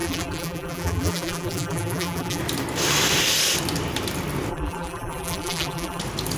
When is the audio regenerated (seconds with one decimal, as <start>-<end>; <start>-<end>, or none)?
0.0-2.4; 4.5-6.0